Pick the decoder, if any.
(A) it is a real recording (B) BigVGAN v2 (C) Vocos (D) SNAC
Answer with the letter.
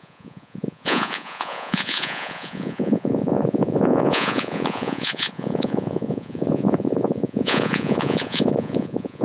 C